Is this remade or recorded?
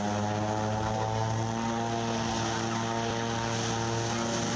recorded